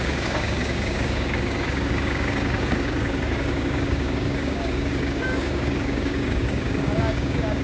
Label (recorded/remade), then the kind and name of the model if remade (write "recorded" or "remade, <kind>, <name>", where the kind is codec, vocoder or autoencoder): remade, codec, DAC